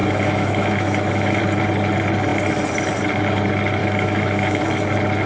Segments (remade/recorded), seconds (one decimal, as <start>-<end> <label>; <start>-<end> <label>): 0.0-1.4 remade; 1.4-3.8 recorded; 3.8-4.6 remade; 4.6-5.3 recorded